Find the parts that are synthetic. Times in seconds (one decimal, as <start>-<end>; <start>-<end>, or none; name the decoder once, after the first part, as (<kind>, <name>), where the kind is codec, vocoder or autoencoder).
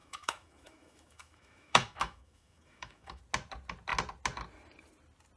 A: 0.0-3.2 (autoencoder, DAC-VAE)